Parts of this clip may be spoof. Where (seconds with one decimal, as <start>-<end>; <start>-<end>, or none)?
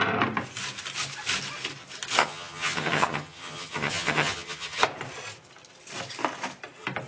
2.2-4.8